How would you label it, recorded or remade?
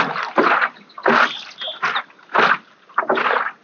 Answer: recorded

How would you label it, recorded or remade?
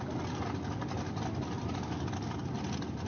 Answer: recorded